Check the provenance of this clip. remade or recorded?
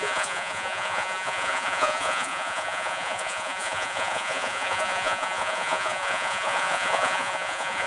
remade